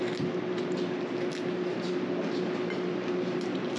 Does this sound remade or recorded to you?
recorded